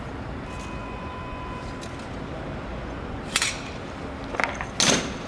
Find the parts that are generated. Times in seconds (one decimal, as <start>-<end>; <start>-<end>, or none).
0.8-1.6; 2.7-3.2

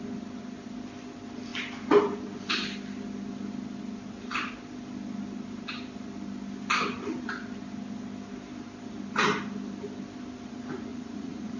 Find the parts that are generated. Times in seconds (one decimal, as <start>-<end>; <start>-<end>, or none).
10.9-11.6